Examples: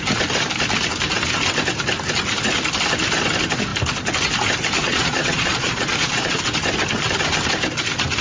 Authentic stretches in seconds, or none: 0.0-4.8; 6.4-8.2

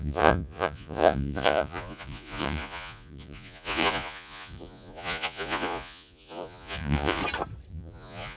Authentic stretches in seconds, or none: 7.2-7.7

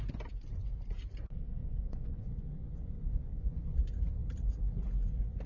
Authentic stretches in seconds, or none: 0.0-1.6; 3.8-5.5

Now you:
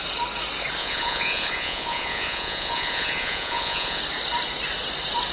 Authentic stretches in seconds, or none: 0.0-0.8; 4.0-5.3